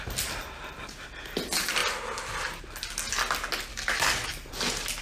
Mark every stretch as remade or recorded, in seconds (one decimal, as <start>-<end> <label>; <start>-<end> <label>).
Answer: 0.0-3.7 recorded; 3.7-4.5 remade; 4.5-5.0 recorded